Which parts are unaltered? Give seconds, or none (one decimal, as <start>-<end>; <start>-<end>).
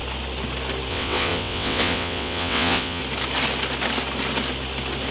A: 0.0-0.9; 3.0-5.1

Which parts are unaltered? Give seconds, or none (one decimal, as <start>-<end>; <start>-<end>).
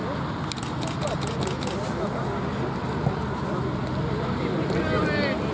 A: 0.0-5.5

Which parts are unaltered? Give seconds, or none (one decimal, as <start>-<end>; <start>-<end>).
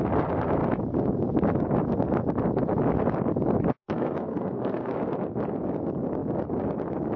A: 0.0-3.7; 4.9-7.2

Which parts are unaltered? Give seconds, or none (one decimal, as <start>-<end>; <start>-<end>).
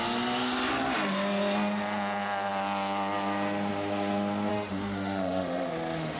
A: 0.0-4.5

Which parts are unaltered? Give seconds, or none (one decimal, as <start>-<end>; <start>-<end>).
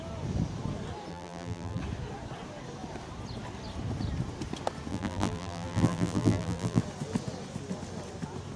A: 0.0-1.1; 1.8-4.9; 6.8-8.6